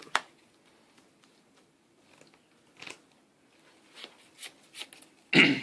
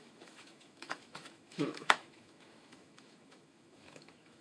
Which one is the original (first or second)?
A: first